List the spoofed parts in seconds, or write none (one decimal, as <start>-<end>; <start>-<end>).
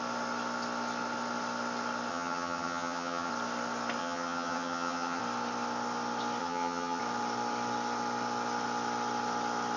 2.1-3.3; 4.0-5.2; 6.4-7.0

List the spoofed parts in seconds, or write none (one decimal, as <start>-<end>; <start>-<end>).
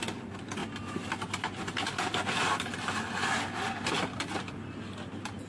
none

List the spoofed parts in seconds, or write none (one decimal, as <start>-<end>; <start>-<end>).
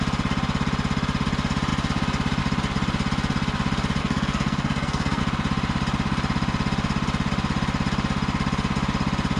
4.0-5.2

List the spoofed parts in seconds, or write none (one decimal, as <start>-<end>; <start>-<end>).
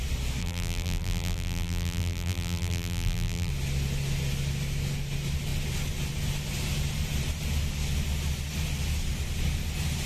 0.4-3.5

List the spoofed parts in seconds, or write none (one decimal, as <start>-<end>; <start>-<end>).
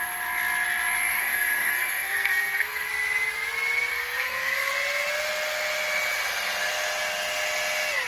1.1-2.9; 3.9-4.7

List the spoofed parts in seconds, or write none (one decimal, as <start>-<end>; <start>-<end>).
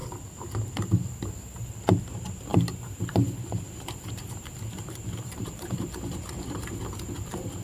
2.5-6.8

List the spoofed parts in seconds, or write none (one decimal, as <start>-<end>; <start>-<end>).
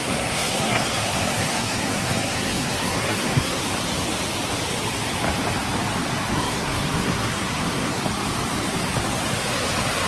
0.0-3.6; 6.3-8.0